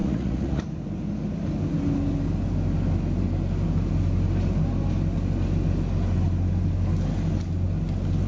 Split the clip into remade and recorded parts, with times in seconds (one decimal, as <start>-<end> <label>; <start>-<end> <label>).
0.0-0.6 remade; 0.6-8.3 recorded

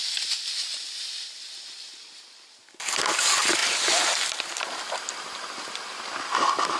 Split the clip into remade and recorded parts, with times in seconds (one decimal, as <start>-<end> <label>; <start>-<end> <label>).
0.0-6.8 recorded

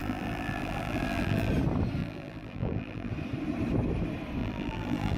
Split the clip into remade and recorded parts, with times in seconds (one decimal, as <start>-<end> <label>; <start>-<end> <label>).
0.0-1.5 remade; 1.5-2.0 recorded; 2.0-3.1 remade; 3.1-4.4 recorded; 4.4-5.2 remade

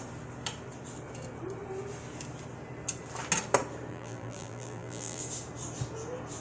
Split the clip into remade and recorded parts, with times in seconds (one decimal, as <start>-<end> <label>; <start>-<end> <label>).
0.0-3.9 recorded; 3.9-5.2 remade; 5.2-6.4 recorded